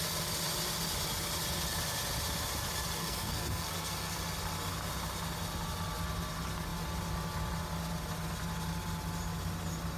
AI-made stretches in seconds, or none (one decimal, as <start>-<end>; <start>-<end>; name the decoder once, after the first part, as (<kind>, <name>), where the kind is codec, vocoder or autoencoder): 3.0-4.2 (codec, SNAC)

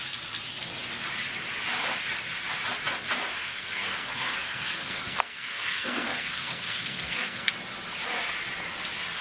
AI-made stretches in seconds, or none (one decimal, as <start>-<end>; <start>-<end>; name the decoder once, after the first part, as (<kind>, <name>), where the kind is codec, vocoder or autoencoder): 3.4-7.5 (codec, SNAC)

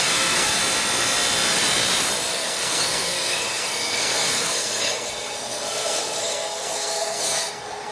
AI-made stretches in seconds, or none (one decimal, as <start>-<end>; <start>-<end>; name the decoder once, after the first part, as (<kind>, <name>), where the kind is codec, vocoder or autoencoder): 0.0-0.6 (codec, SNAC); 2.3-7.9

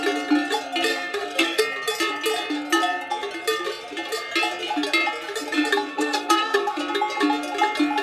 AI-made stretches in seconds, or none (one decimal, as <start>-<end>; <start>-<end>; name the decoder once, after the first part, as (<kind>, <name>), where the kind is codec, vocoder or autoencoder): 0.9-1.6 (codec, SNAC); 5.9-6.8